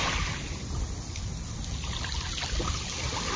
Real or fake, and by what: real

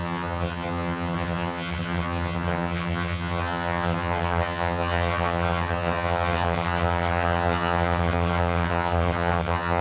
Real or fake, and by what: fake, vocoder, HiFi-GAN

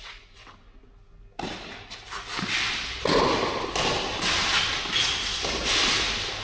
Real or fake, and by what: real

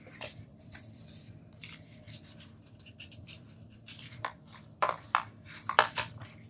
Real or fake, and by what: fake, vocoder, BigVGAN v2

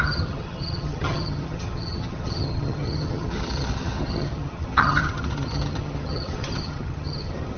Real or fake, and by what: fake, vocoder, HiFi-GAN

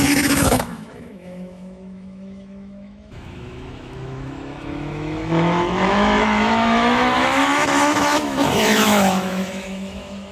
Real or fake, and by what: fake, autoencoder, DAC-VAE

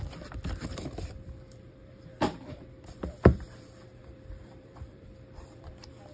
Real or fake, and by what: fake, vocoder, BigVGAN v2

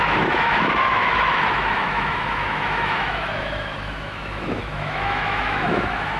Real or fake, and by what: fake, autoencoder, DAC-VAE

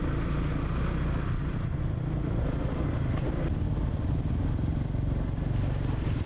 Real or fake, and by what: real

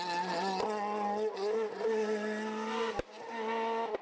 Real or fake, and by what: real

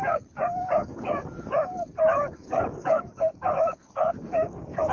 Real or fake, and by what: fake, codec, DAC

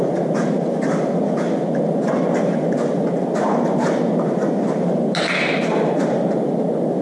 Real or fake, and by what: real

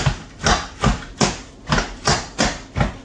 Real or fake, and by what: real